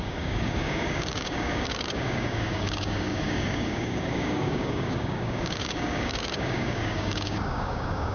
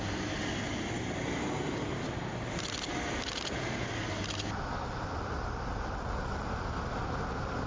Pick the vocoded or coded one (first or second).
first